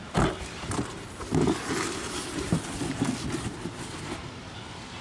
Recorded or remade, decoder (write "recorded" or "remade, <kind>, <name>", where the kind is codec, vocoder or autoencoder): recorded